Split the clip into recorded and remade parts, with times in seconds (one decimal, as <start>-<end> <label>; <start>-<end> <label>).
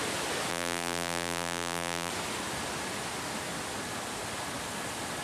0.0-0.5 recorded; 0.5-2.1 remade; 2.1-5.2 recorded